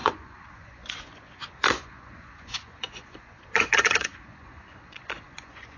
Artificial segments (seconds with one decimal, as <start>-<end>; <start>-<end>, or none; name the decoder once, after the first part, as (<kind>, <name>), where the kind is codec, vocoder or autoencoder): 0.0-5.8 (vocoder, Vocos)